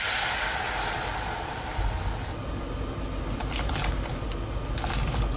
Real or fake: real